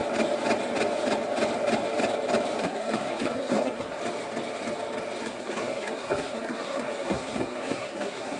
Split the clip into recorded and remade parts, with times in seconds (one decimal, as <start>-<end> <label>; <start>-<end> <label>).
0.0-2.6 recorded; 2.6-4.0 remade; 4.0-5.2 recorded; 5.2-8.4 remade